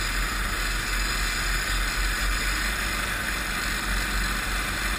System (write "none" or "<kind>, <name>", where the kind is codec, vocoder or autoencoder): none